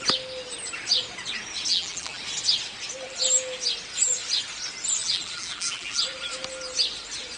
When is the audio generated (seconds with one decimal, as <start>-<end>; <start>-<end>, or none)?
1.7-2.2; 5.0-6.0